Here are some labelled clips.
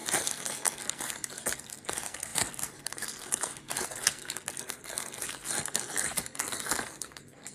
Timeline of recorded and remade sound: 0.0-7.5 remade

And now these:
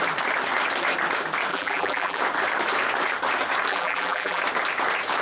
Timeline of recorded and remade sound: 0.0-1.5 recorded; 1.5-2.2 remade; 2.2-3.7 recorded; 3.7-4.4 remade; 4.4-5.2 recorded

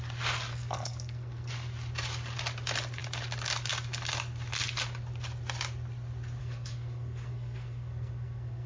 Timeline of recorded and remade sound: 0.0-0.5 recorded; 0.5-1.5 remade; 1.5-6.4 recorded; 6.4-8.7 remade

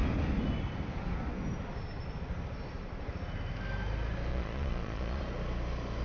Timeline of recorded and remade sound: 0.0-4.3 recorded; 4.3-5.2 remade; 5.2-6.0 recorded

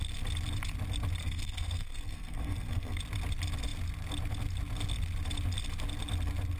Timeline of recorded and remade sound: 0.0-1.2 recorded; 1.2-3.0 remade; 3.0-6.6 recorded

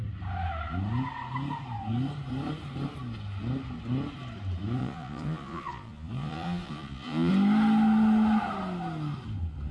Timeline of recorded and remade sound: 0.0-4.8 recorded; 4.8-7.3 remade; 7.3-9.7 recorded

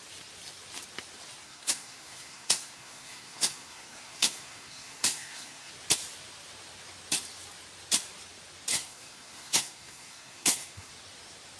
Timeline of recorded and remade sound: 0.0-1.4 recorded; 1.4-5.7 remade; 5.7-8.7 recorded; 8.7-10.9 remade; 10.9-11.6 recorded